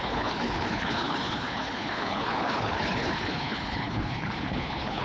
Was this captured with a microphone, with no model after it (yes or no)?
no